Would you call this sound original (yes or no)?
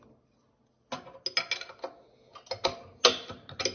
yes